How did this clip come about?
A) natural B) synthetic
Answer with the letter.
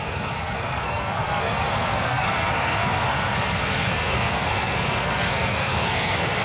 B